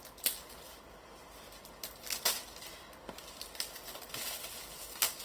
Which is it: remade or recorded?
recorded